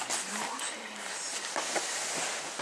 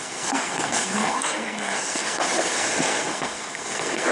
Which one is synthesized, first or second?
second